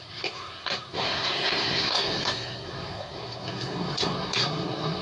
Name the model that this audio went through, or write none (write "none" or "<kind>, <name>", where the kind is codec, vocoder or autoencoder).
codec, SNAC